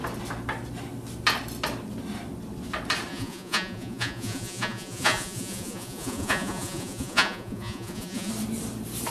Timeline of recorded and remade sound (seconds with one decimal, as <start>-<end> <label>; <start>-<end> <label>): 0.0-3.1 recorded; 3.1-8.3 remade; 8.3-9.1 recorded